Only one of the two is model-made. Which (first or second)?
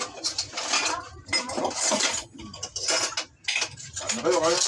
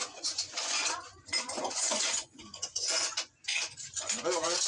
second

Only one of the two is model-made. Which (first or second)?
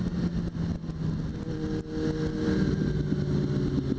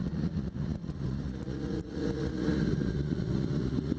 second